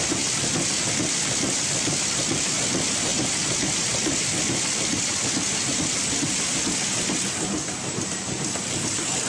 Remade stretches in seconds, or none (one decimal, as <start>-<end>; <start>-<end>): none